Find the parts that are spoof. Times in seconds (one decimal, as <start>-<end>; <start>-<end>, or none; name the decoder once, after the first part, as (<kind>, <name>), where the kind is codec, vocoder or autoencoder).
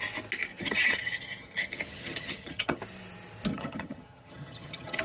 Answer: 0.5-2.8 (vocoder, HiFi-GAN); 3.5-5.0